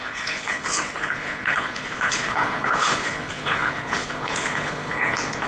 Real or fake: fake